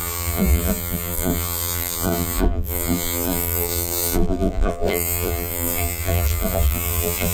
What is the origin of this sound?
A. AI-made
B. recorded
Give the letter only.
A